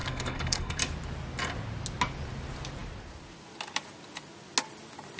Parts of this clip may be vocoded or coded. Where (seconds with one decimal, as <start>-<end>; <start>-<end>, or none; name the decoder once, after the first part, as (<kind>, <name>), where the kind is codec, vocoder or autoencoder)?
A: 0.0-0.8 (codec, SNAC)